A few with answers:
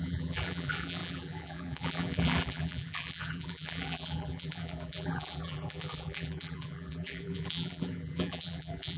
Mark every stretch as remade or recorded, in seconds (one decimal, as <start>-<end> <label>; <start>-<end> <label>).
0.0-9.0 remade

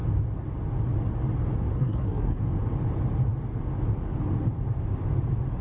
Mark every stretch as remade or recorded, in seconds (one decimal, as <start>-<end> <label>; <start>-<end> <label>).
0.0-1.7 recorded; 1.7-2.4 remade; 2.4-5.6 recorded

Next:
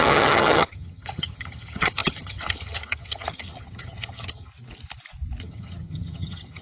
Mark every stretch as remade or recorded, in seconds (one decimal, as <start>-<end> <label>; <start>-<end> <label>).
0.0-4.5 remade; 4.5-5.4 recorded; 5.4-6.6 remade